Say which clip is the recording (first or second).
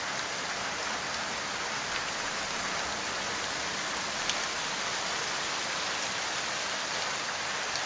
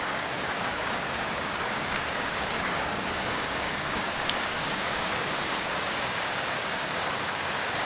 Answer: first